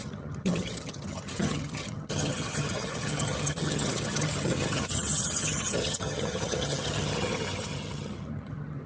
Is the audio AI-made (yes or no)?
yes